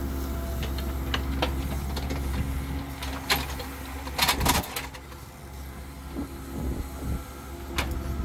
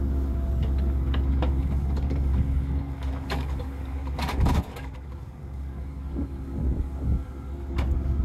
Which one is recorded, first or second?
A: first